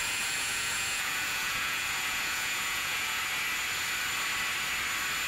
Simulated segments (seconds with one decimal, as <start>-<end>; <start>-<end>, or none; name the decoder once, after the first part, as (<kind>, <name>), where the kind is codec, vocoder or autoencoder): 0.0-3.2 (vocoder, Vocos)